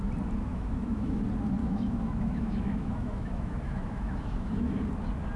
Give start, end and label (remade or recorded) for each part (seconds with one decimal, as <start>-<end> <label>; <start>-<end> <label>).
0.0-0.5 recorded; 0.5-1.2 remade; 1.2-1.6 recorded; 1.6-4.8 remade; 4.8-5.4 recorded